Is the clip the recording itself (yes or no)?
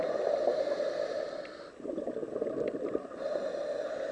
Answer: yes